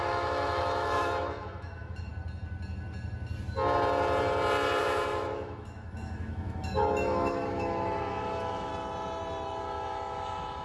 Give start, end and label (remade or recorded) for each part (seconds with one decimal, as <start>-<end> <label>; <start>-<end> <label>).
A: 0.0-2.1 remade; 2.1-4.8 recorded; 4.8-8.7 remade; 8.7-9.6 recorded; 9.6-10.6 remade